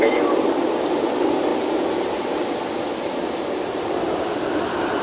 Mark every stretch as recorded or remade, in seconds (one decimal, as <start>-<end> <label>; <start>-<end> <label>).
0.0-5.0 recorded